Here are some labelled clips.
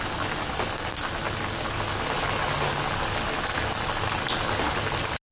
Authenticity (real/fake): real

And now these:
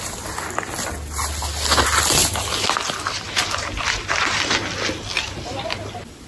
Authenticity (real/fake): real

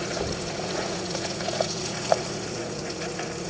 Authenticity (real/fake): fake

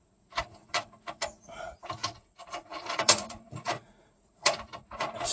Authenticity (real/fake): fake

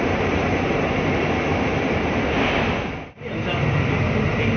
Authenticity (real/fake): real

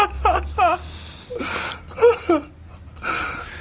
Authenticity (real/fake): real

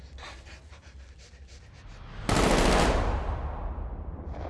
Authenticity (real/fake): real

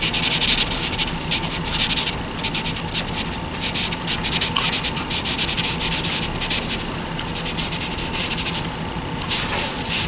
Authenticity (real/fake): real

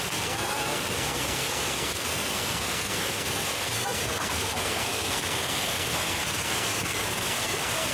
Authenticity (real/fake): fake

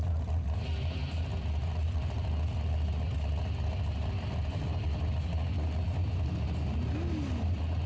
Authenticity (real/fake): real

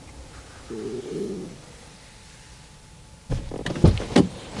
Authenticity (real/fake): real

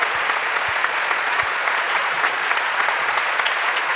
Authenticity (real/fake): fake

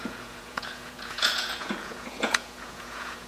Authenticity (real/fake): fake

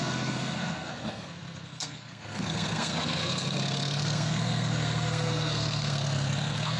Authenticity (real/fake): fake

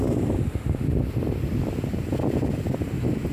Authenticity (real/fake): real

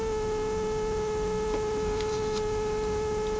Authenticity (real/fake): real